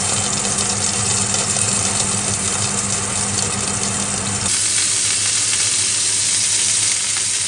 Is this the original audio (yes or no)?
yes